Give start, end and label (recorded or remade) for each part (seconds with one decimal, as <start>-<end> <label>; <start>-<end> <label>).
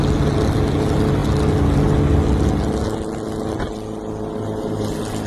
0.0-5.3 recorded